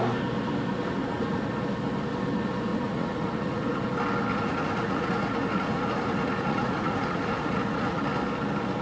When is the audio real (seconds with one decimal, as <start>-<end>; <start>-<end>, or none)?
0.0-1.0; 1.5-2.7; 3.9-4.3; 8.0-8.8

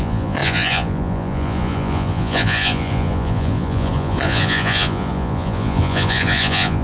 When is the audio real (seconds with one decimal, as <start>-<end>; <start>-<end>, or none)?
none

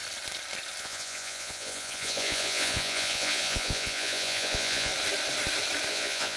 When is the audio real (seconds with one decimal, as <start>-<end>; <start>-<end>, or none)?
0.0-0.8; 4.9-5.9

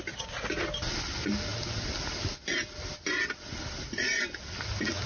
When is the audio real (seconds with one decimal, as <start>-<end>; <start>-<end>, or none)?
0.0-5.1

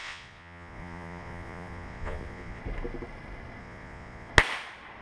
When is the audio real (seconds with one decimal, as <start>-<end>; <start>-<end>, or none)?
2.6-3.6; 4.3-5.0

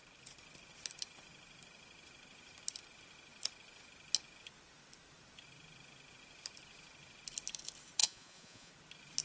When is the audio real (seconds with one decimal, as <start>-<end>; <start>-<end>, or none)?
0.0-8.0; 8.7-9.2

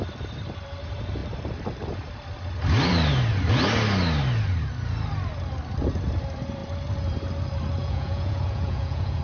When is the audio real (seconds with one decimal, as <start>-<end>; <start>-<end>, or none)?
0.0-7.8

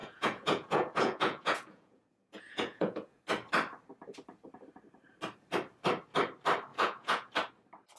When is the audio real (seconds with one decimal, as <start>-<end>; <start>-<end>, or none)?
3.2-6.7; 7.3-8.0